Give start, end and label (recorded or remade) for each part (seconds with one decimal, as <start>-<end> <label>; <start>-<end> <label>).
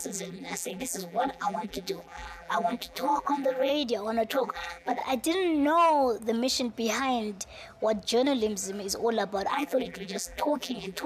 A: 0.0-3.7 remade; 3.7-4.3 recorded; 4.3-5.0 remade; 5.0-9.5 recorded; 9.5-11.1 remade